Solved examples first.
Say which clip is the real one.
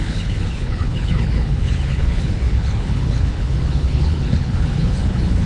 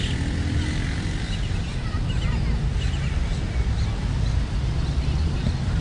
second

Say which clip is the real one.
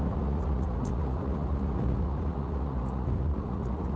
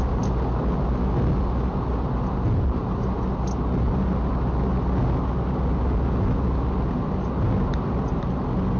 second